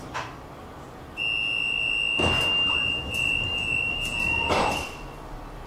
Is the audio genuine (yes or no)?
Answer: yes